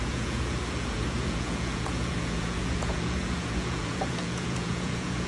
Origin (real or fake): fake